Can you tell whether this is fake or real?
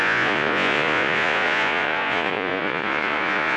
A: fake